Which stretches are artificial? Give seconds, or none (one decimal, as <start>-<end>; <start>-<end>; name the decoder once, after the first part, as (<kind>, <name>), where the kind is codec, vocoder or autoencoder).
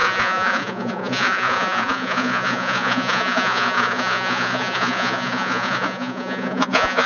0.0-7.1 (vocoder, Vocos)